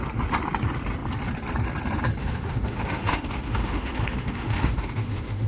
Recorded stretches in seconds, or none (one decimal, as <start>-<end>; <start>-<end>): 0.0-2.2